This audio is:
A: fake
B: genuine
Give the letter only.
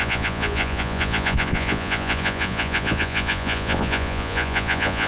A